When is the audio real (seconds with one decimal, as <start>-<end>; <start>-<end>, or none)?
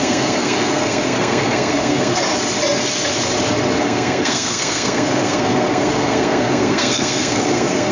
2.3-3.8